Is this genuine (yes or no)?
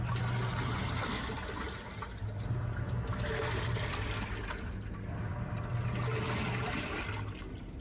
yes